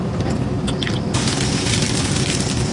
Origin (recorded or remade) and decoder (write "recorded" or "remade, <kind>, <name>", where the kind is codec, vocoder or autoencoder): recorded